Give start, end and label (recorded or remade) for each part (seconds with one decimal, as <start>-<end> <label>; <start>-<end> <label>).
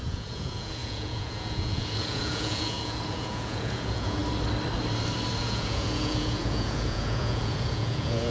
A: 0.0-4.2 remade; 4.2-5.4 recorded; 5.4-8.3 remade